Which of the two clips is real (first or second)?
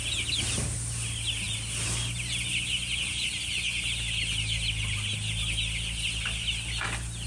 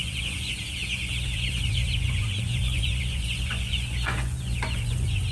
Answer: first